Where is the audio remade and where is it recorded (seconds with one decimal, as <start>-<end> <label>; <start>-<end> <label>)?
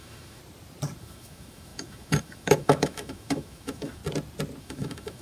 0.0-0.4 remade; 0.4-1.0 recorded; 1.0-4.0 remade; 4.0-4.6 recorded; 4.6-5.2 remade